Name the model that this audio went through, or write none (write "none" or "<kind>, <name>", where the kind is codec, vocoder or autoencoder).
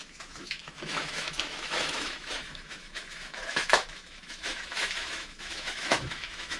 autoencoder, DAC-VAE